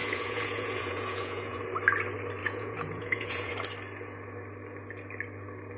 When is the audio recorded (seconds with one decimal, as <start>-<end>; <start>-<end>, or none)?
1.6-2.4; 3.5-5.8